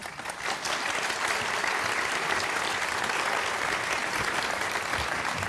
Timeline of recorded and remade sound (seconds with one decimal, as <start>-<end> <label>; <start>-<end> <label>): 0.0-4.0 recorded; 4.0-5.5 remade